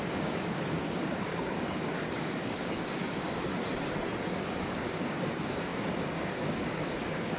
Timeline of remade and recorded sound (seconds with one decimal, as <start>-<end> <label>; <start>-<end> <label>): 0.0-3.5 remade; 3.5-4.3 recorded; 4.3-7.4 remade

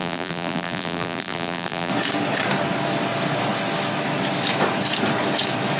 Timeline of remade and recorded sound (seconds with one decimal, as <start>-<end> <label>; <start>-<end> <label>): 0.0-1.9 remade; 1.9-5.8 recorded

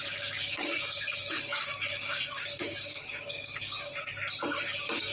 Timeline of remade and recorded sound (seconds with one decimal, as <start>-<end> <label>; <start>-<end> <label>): 0.0-3.9 remade; 3.9-4.4 recorded; 4.4-5.1 remade

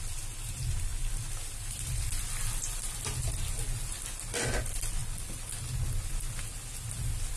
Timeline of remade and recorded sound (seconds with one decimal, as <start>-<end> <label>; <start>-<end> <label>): 0.0-7.4 recorded